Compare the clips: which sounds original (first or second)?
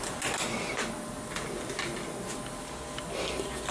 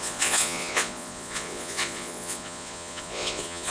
first